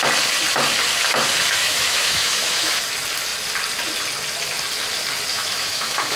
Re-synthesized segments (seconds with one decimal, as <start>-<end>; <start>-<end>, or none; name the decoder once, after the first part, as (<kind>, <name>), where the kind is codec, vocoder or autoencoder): 1.6-2.8 (autoencoder, DAC-VAE); 5.3-6.2